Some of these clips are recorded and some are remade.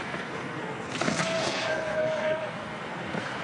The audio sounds remade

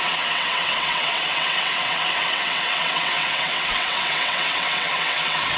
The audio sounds remade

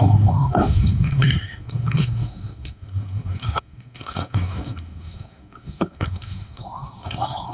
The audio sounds remade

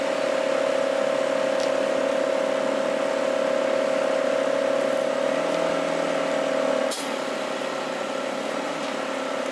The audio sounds recorded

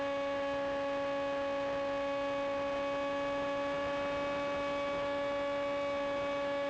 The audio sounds recorded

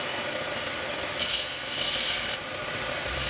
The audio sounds recorded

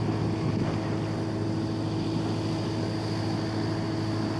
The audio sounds recorded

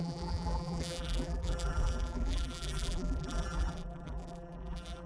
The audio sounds remade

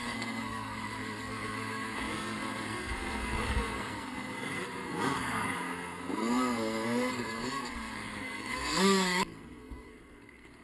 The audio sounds remade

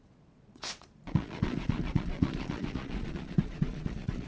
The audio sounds remade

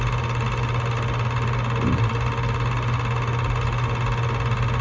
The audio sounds recorded